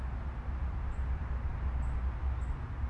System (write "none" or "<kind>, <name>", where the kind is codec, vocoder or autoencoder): none